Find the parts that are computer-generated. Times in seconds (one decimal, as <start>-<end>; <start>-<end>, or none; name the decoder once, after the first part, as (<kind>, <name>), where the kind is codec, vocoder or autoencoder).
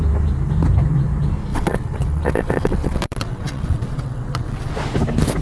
1.5-4.7 (vocoder, WaveNeXt)